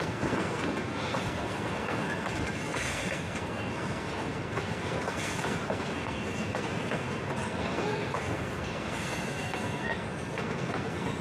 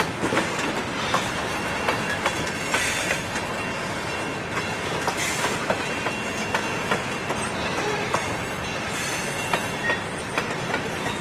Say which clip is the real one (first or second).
second